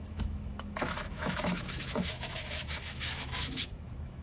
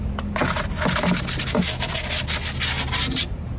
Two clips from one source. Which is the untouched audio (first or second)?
second